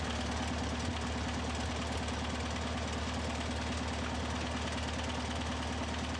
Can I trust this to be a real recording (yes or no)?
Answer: yes